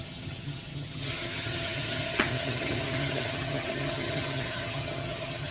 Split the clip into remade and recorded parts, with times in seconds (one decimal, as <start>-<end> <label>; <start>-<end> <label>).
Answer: 0.0-5.5 remade